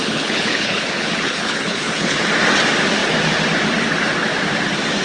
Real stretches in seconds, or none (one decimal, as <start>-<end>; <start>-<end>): 2.3-5.0